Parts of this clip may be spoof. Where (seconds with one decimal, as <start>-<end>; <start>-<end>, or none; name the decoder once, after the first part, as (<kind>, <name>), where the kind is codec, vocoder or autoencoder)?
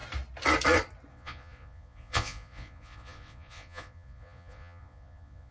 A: 1.1-5.5 (vocoder, Vocos)